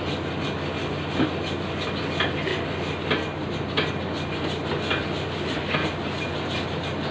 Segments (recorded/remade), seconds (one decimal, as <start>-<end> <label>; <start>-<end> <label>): 0.0-7.1 recorded